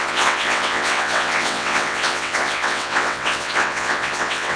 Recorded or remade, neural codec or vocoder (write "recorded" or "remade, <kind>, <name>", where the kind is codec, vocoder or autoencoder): remade, vocoder, WaveNeXt